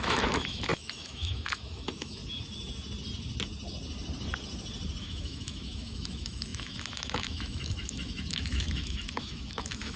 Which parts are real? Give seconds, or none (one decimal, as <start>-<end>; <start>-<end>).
2.2-5.0